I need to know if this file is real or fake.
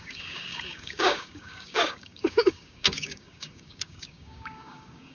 fake